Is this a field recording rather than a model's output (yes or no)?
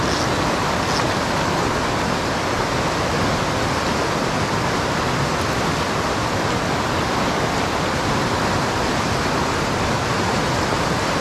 yes